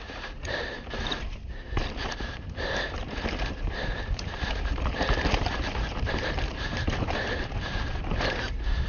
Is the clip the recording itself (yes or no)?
no